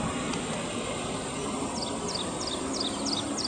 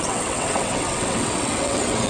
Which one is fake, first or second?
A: second